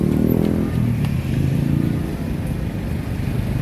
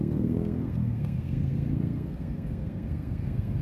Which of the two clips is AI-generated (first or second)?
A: second